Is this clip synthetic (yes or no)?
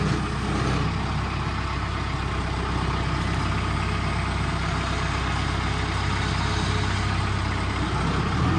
no